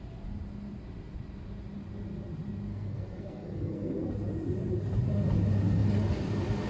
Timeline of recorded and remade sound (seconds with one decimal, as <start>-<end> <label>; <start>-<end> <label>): 0.0-2.7 recorded; 2.7-4.1 remade; 4.1-6.7 recorded